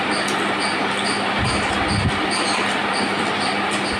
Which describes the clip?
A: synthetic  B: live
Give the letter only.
B